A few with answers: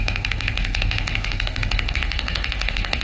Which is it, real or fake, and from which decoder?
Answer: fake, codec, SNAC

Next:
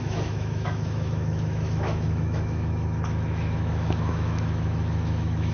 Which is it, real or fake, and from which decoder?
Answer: fake, autoencoder, DAC-VAE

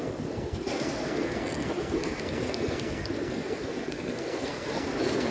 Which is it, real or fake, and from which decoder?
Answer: fake, codec, SNAC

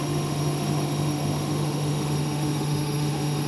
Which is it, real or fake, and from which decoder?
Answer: fake, autoencoder, DAC-VAE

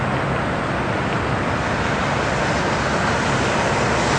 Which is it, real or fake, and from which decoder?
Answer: real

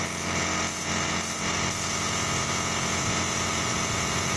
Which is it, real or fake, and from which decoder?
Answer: real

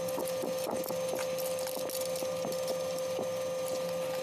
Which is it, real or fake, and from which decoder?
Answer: real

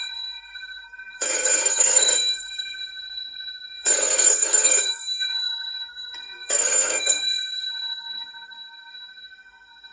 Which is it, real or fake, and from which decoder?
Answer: fake, codec, SNAC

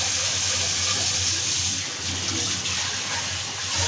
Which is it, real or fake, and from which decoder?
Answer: real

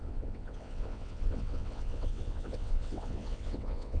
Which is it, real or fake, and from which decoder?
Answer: fake, vocoder, WaveNeXt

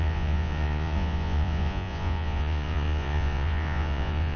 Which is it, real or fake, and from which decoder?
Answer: fake, vocoder, Vocos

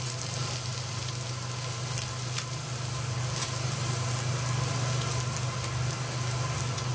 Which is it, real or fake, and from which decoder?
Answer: real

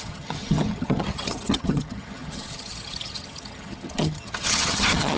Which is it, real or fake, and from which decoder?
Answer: fake, vocoder, HiFi-GAN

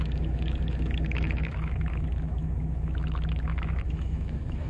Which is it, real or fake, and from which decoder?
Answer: fake, autoencoder, DAC-VAE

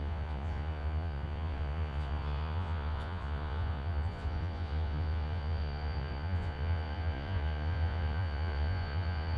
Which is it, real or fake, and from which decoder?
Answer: fake, vocoder, Vocos